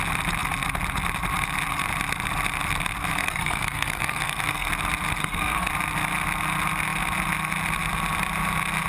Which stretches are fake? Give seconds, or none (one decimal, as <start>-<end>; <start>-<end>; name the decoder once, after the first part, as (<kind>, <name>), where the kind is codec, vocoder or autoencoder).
3.2-4.7 (codec, SNAC); 5.2-5.7